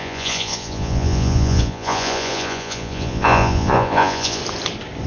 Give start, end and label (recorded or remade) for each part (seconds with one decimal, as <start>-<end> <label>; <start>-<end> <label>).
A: 0.0-4.4 remade; 4.4-5.1 recorded